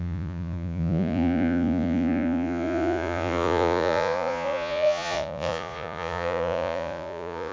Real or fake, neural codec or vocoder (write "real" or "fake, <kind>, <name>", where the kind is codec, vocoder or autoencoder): fake, vocoder, Vocos